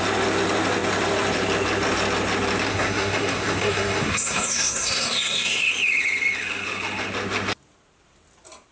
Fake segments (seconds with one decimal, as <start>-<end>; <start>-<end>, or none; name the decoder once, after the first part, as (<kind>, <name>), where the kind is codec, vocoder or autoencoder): 2.7-5.7 (codec, SNAC)